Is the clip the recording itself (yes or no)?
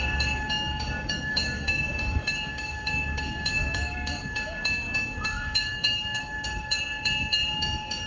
no